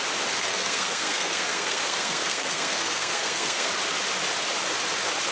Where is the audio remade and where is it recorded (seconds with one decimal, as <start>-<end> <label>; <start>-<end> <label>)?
0.0-0.5 recorded; 0.5-3.7 remade; 3.7-5.3 recorded